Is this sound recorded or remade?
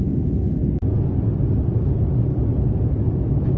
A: recorded